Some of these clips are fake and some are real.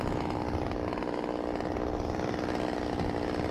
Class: real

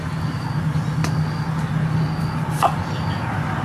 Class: real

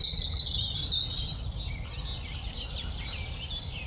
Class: real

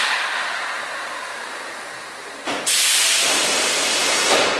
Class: fake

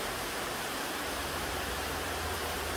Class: fake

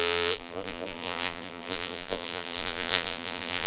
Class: fake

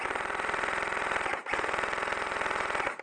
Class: fake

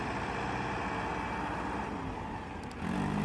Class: real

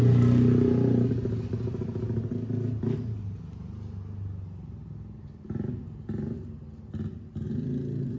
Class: real